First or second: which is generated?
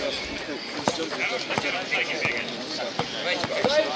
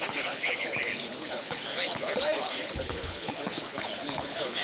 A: second